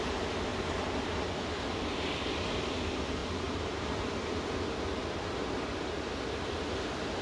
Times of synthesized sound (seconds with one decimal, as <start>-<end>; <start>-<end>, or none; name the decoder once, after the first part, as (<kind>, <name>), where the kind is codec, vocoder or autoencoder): none